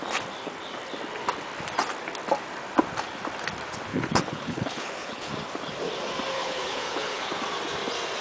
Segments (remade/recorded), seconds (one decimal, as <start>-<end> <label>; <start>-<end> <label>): 0.0-3.9 recorded; 3.9-5.3 remade; 5.3-6.3 recorded; 6.3-7.4 remade; 7.4-8.2 recorded